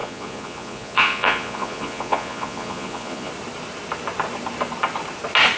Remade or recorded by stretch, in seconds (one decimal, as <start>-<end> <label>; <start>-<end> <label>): 0.0-3.3 remade; 3.3-5.6 recorded